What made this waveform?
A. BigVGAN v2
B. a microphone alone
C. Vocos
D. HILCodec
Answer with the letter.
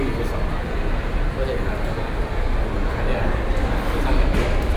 B